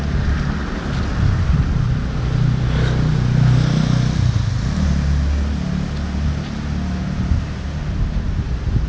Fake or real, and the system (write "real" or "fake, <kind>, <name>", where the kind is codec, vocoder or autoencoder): real